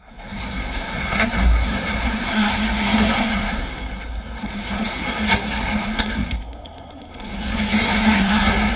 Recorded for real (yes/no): no